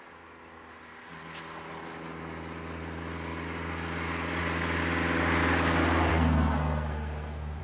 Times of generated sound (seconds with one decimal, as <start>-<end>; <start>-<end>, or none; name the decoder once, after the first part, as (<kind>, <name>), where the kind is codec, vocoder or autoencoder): 6.1-7.6 (codec, SNAC)